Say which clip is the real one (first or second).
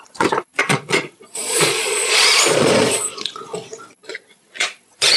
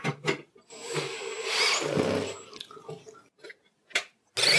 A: second